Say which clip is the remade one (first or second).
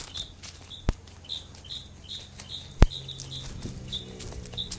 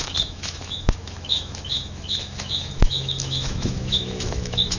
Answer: second